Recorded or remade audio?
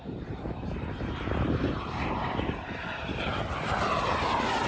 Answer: remade